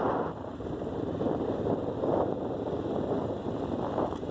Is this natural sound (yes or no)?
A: yes